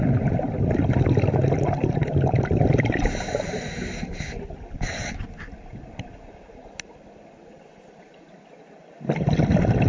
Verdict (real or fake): real